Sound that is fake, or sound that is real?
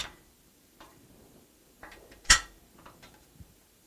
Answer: fake